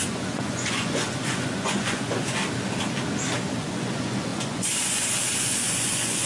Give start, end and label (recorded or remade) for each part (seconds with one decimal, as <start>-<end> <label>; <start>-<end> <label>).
0.0-2.4 remade; 2.4-3.6 recorded; 3.6-6.3 remade